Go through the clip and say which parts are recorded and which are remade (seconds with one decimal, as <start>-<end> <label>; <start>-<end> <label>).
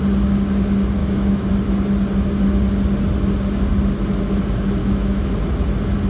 0.0-1.0 recorded; 1.0-1.5 remade; 1.5-4.8 recorded; 4.8-5.3 remade; 5.3-6.1 recorded